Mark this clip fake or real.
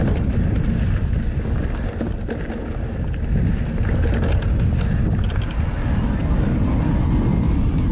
real